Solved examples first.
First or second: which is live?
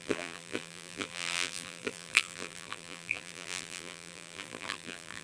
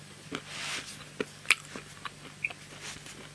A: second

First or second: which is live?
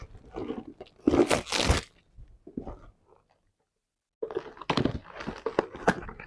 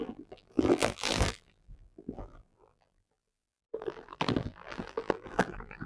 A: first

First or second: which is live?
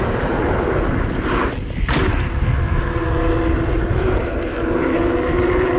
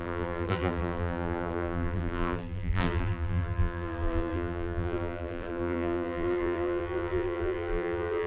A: first